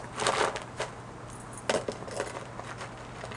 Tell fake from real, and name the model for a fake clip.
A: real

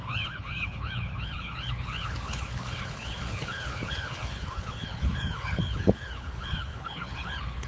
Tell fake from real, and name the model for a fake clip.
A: fake, codec, HILCodec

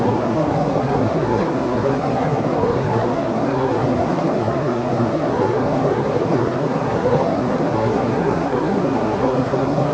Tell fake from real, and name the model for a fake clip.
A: fake, codec, SNAC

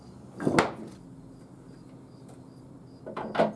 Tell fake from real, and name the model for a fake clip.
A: real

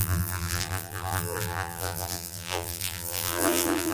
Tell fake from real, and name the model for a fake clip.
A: fake, vocoder, BigVGAN v2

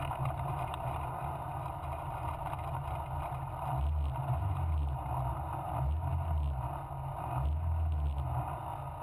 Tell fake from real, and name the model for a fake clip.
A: real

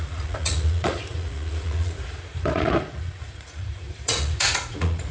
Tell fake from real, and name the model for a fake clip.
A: fake, vocoder, Vocos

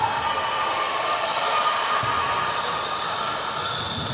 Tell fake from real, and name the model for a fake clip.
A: fake, vocoder, BigVGAN v2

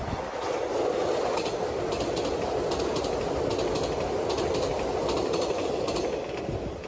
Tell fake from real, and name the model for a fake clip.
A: real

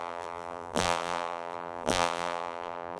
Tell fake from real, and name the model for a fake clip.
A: fake, vocoder, BigVGAN v2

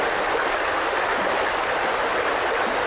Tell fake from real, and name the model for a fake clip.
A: real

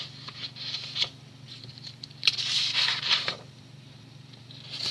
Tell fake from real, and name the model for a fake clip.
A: fake, vocoder, BigVGAN v2